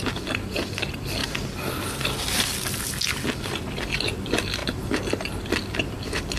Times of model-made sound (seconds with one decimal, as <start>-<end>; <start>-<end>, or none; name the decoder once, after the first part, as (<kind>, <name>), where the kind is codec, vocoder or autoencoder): none